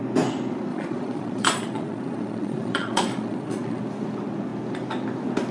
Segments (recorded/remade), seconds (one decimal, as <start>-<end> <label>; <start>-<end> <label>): 0.0-0.7 recorded; 0.7-3.8 remade; 3.8-5.5 recorded